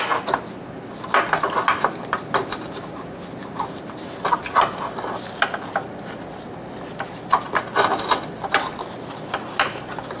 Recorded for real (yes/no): yes